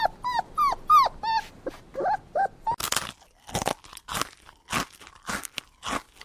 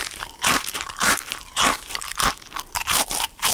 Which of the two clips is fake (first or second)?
second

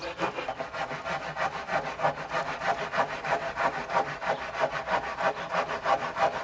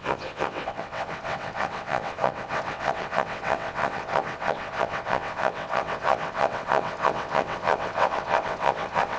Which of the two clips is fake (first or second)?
second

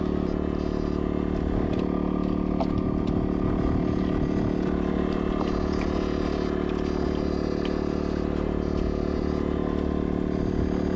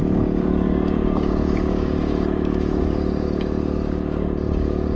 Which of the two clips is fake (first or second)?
second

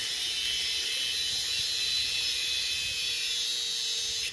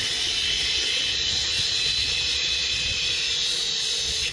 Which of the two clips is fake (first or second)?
second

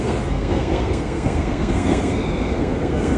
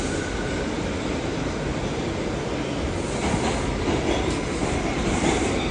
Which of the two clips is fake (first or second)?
first